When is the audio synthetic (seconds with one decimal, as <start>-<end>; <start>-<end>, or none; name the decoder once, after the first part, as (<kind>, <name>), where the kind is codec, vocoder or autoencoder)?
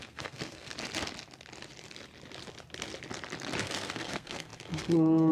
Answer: 0.0-0.7 (codec, SNAC); 3.6-5.3